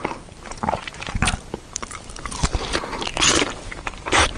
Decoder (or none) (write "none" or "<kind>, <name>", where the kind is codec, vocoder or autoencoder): vocoder, BigVGAN v2